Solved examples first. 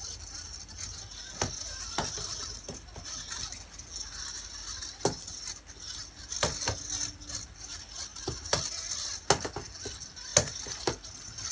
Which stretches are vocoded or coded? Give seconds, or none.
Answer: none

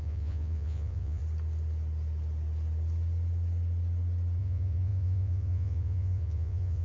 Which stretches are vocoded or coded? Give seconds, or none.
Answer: 0.0-1.2 (vocoder, Vocos); 4.4-6.8

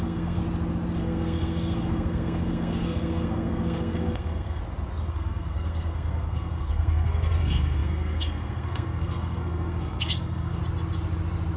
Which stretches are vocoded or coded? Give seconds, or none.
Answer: 0.0-0.4 (codec, SNAC); 1.0-4.6; 5.1-10.6

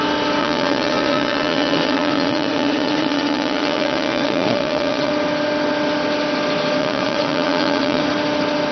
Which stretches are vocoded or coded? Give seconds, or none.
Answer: 0.4-5.1 (vocoder, Vocos); 6.8-8.0

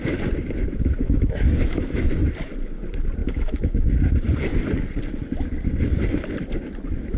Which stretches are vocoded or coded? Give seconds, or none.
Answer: 1.0-2.1 (autoencoder, DAC-VAE); 3.2-4.0

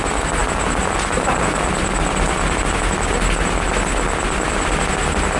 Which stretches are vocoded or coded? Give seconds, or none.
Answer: none